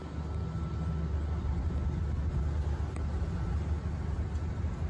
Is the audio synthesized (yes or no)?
no